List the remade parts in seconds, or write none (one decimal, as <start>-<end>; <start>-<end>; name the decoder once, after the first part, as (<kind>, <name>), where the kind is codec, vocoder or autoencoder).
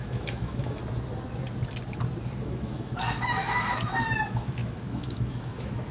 0.0-0.8 (autoencoder, DAC-VAE); 2.4-5.9